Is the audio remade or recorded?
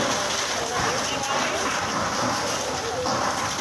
recorded